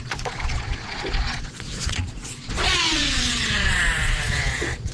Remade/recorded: remade